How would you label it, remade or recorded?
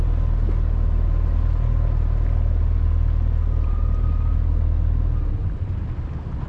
recorded